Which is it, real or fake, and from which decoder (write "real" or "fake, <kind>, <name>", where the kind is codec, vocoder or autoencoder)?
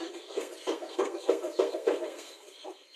fake, codec, SNAC